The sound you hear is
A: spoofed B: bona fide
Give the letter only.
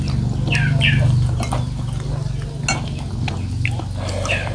B